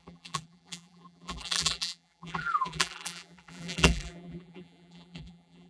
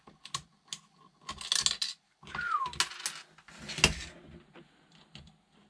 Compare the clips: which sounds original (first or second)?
second